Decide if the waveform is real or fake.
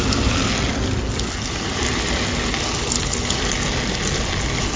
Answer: real